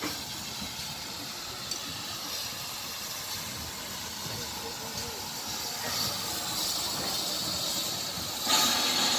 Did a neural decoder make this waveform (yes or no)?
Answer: no